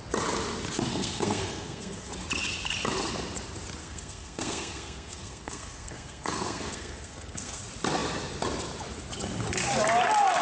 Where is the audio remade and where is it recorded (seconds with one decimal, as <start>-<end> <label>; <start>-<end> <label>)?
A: 0.0-0.9 recorded; 0.9-2.1 remade; 2.1-3.8 recorded; 3.8-7.6 remade; 7.6-10.4 recorded